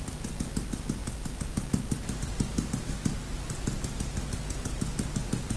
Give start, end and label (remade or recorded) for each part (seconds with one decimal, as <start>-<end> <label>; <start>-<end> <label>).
0.0-5.6 recorded